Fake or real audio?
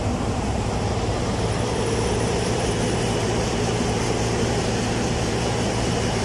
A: fake